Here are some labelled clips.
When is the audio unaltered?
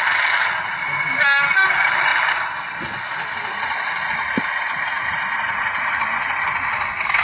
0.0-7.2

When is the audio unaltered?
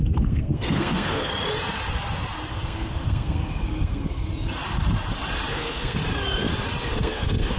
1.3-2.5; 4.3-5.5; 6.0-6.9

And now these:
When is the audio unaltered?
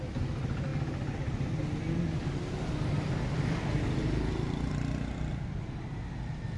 0.0-6.6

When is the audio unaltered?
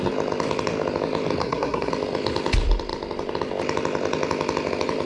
0.0-1.4; 1.9-5.1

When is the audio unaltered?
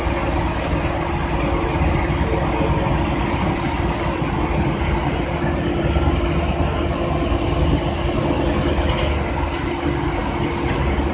0.0-11.1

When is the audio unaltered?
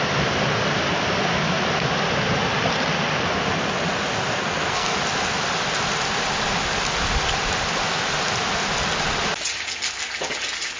0.0-4.4; 5.0-10.8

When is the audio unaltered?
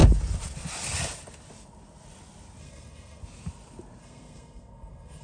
0.0-2.6; 3.2-4.0